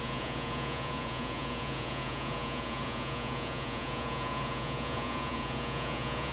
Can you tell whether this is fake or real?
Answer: fake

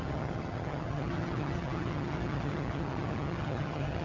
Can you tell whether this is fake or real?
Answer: fake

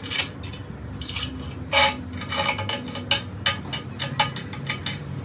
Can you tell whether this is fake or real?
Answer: real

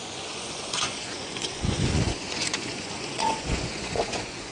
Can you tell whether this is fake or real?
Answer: fake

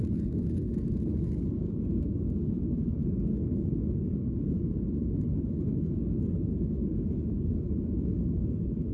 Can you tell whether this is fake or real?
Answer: fake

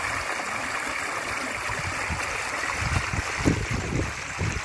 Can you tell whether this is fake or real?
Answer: real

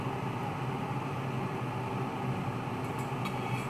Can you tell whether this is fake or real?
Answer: real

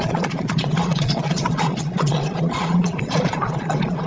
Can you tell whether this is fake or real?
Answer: fake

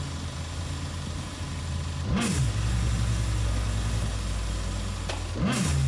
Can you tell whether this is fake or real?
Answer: real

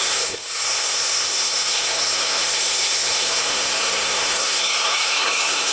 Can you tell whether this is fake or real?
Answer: fake